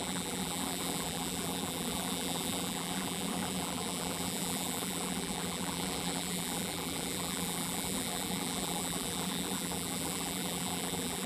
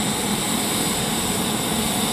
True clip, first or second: second